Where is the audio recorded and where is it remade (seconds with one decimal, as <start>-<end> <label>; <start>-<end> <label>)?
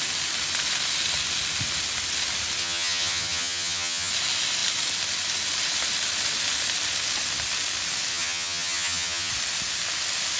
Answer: 0.0-2.6 recorded; 2.6-4.1 remade; 4.1-8.1 recorded; 8.1-9.3 remade; 9.3-10.4 recorded